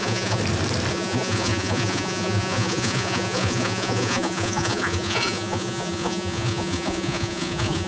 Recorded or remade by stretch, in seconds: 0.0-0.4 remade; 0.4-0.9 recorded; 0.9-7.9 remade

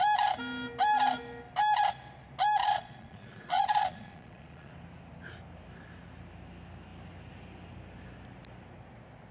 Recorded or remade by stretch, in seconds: 0.0-2.6 recorded; 2.6-4.7 remade; 4.7-9.3 recorded

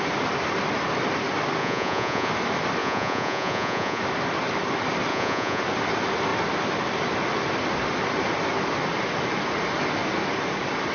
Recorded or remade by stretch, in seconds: 0.0-1.6 recorded; 1.6-2.3 remade; 2.3-2.8 recorded; 2.8-4.0 remade; 4.0-5.1 recorded; 5.1-5.6 remade; 5.6-10.9 recorded

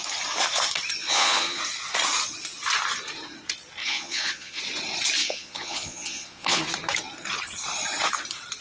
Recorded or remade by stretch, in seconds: 0.0-1.0 recorded; 1.0-1.6 remade; 1.6-3.8 recorded; 3.8-4.6 remade; 4.6-5.2 recorded; 5.2-6.6 remade; 6.6-8.6 recorded